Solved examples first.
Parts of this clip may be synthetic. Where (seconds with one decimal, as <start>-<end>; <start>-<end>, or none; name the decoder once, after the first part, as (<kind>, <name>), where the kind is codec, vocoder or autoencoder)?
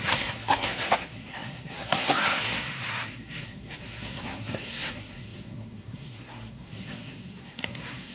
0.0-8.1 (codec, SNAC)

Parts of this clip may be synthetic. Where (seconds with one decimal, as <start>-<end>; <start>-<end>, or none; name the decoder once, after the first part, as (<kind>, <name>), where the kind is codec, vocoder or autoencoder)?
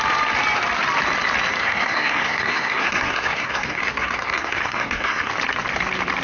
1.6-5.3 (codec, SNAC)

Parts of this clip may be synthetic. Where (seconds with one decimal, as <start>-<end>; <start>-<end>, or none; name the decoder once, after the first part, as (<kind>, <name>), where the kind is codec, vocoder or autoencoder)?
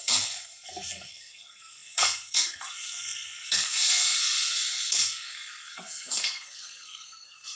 0.0-7.6 (codec, SNAC)